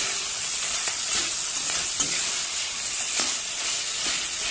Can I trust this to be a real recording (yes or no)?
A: no